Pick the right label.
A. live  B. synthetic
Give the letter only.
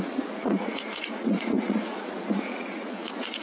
B